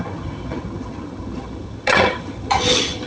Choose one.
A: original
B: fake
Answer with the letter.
B